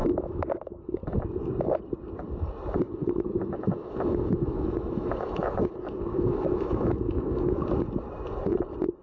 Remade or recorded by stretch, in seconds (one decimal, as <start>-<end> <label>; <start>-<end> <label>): 0.0-1.0 remade; 1.0-3.0 recorded; 3.0-7.6 remade; 7.6-9.0 recorded